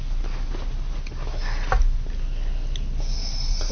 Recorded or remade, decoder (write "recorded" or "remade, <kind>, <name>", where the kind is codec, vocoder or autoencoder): recorded